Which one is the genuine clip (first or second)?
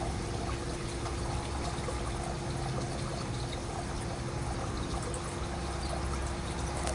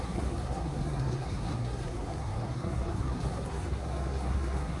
first